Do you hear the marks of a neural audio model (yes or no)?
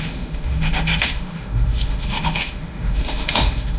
yes